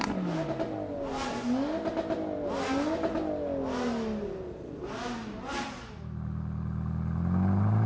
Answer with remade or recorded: recorded